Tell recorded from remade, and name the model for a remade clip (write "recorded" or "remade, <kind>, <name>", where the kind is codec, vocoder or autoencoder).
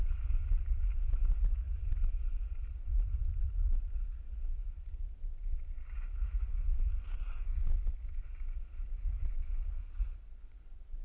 recorded